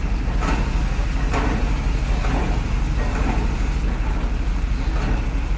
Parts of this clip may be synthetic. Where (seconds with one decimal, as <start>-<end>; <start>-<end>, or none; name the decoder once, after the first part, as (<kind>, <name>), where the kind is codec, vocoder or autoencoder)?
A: none